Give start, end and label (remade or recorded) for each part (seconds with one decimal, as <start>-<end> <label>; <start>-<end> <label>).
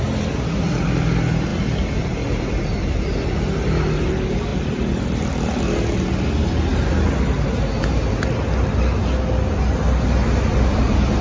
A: 0.0-1.5 recorded; 1.5-2.6 remade; 2.6-4.5 recorded; 4.5-5.6 remade; 5.6-11.2 recorded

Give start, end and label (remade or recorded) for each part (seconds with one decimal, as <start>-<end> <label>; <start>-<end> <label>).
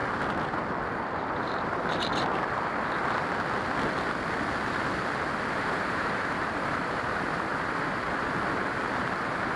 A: 0.0-1.2 recorded; 1.2-2.1 remade; 2.1-5.6 recorded; 5.6-7.5 remade; 7.5-8.9 recorded; 8.9-9.6 remade